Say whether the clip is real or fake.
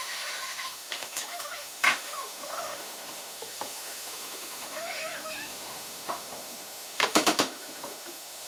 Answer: fake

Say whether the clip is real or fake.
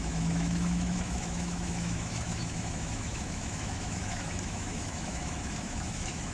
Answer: fake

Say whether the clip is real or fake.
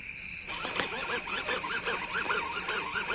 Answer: real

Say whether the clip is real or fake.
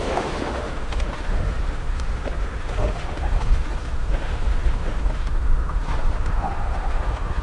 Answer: fake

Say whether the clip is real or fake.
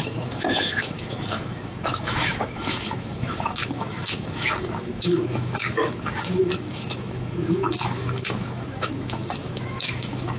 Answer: fake